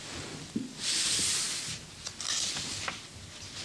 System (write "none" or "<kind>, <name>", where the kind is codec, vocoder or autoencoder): none